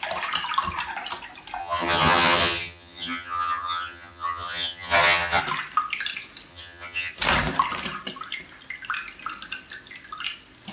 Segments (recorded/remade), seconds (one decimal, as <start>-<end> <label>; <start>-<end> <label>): 0.0-1.6 recorded; 1.6-5.4 remade; 5.4-6.5 recorded; 6.5-7.1 remade; 7.1-10.7 recorded